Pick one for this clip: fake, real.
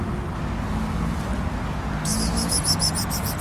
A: real